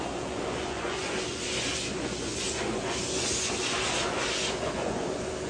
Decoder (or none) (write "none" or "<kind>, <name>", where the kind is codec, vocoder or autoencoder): vocoder, Vocos